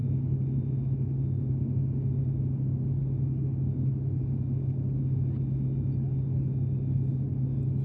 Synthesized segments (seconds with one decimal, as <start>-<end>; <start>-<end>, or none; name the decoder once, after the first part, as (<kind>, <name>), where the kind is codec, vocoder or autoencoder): none